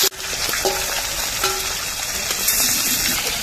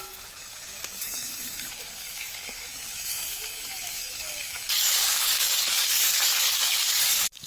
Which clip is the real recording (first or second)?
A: first